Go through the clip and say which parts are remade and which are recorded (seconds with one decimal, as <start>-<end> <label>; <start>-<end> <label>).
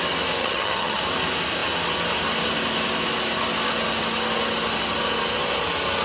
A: 0.0-0.4 recorded; 0.4-1.0 remade; 1.0-6.0 recorded